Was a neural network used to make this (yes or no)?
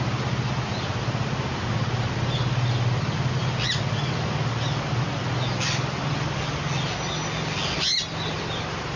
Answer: no